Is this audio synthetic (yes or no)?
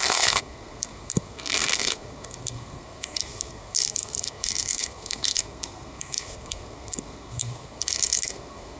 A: yes